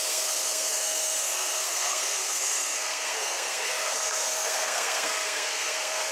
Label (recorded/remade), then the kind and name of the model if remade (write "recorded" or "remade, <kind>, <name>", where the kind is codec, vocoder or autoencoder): remade, codec, SNAC